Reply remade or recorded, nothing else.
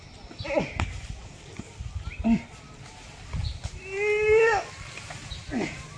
recorded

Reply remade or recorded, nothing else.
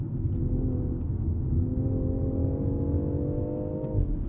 recorded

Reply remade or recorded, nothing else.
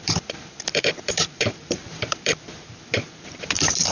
remade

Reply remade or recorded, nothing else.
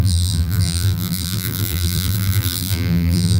remade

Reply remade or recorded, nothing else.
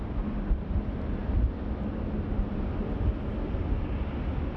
recorded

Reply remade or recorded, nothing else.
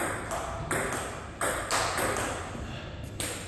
recorded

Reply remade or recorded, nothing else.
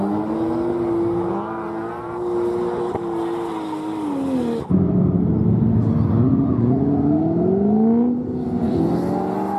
recorded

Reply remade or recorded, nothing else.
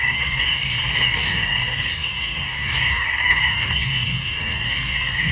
remade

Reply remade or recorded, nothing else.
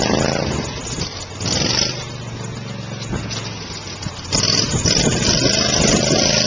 recorded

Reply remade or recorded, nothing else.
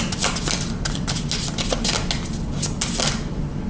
recorded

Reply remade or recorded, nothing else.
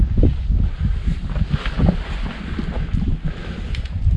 recorded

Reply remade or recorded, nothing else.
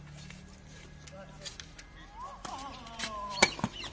recorded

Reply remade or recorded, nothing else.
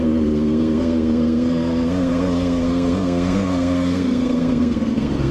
remade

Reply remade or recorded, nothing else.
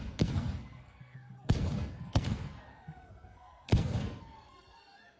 remade